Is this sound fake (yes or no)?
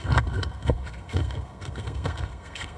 yes